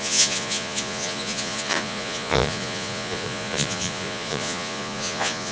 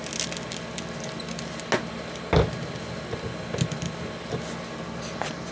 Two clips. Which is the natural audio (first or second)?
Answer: second